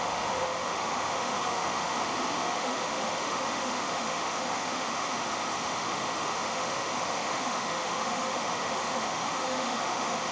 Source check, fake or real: fake